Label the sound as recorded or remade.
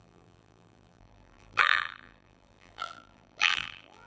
remade